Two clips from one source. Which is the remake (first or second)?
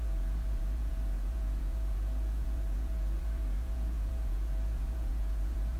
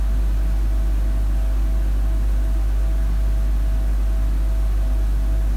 first